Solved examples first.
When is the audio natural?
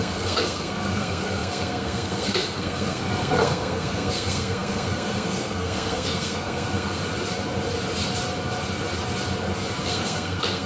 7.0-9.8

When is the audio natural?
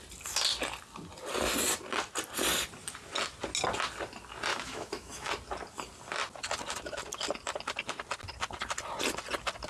0.0-4.5; 5.3-9.7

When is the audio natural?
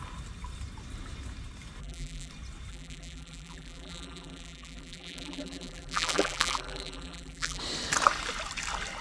0.0-1.8; 2.3-2.7; 7.6-9.0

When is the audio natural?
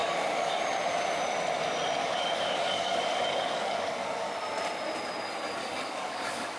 0.6-2.0; 4.3-5.6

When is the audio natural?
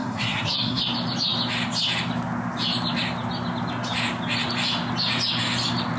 0.8-6.0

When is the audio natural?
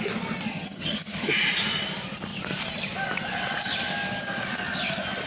0.0-0.5; 1.3-5.3